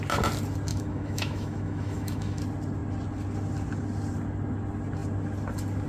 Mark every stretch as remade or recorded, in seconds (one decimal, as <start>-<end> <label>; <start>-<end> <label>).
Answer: 0.0-0.7 recorded; 0.7-2.4 remade; 2.4-5.9 recorded